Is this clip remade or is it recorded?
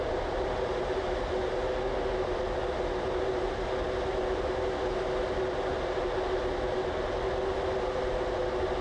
recorded